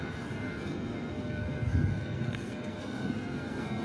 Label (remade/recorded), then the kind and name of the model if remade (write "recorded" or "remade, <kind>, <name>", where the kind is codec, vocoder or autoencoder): remade, codec, SNAC